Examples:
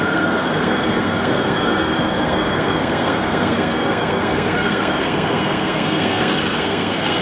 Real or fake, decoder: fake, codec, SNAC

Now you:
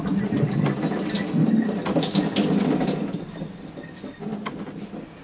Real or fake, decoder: real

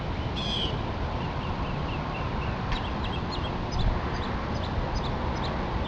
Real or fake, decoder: real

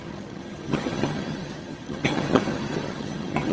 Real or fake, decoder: fake, vocoder, HiFi-GAN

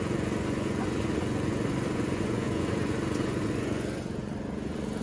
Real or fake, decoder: fake, vocoder, Vocos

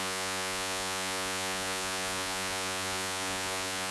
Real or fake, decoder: fake, vocoder, Vocos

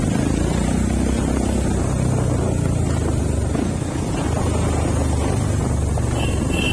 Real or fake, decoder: real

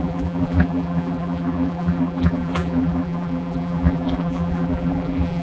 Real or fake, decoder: fake, vocoder, BigVGAN v2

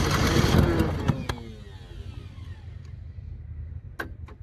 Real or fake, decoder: real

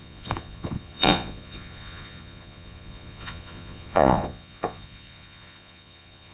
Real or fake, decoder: fake, vocoder, Vocos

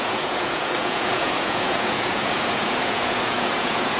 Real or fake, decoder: fake, vocoder, Vocos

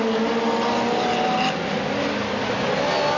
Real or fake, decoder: real